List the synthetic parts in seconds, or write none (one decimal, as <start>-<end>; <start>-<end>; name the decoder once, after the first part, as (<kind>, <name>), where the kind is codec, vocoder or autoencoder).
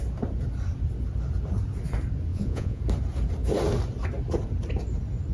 2.3-2.8 (vocoder, Vocos)